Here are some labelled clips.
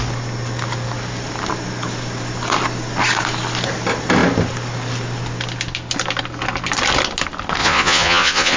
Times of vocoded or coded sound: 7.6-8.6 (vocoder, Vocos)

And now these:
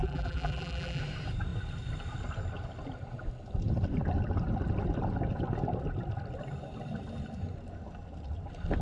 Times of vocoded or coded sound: 0.0-1.0 (vocoder, BigVGAN v2)

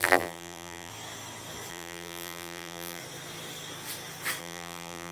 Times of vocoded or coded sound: 0.0-0.9 (vocoder, BigVGAN v2); 1.7-3.0; 4.4-5.1

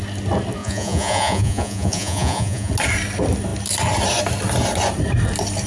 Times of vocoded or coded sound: 0.6-2.7 (vocoder, Vocos)

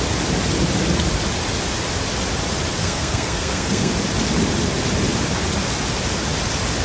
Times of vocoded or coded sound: 2.8-3.9 (codec, SNAC)

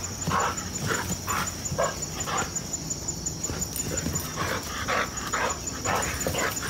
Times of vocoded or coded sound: none